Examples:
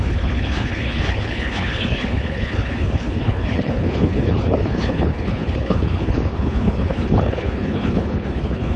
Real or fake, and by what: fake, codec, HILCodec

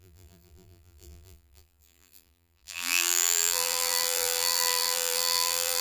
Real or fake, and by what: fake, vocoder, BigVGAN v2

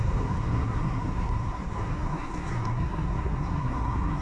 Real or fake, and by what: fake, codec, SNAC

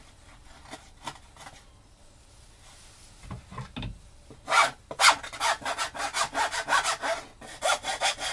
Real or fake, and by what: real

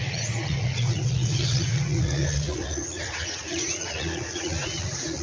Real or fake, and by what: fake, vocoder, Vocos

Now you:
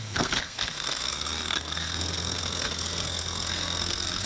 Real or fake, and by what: fake, codec, SNAC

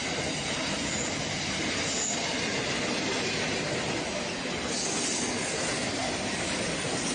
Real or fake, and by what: real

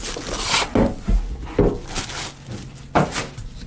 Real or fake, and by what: real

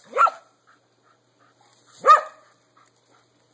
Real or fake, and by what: real